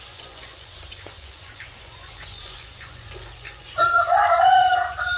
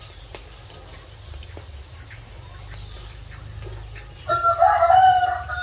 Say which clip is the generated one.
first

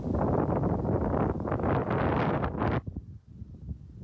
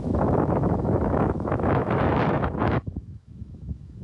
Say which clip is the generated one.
second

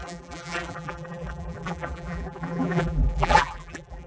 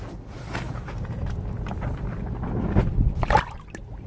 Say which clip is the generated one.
first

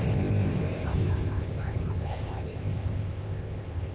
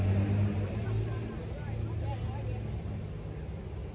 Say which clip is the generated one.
first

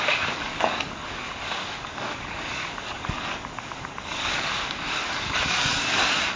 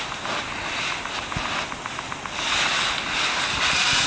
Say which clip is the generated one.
first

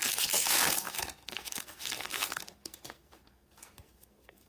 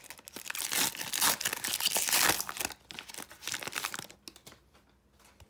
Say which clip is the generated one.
first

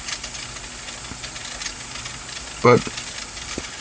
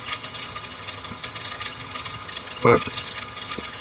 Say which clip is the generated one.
second